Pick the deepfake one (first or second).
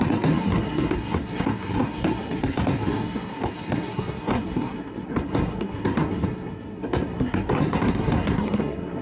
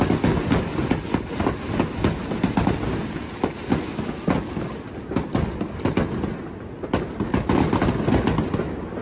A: first